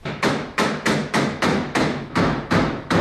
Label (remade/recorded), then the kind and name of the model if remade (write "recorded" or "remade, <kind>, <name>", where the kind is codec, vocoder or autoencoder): remade, autoencoder, DAC-VAE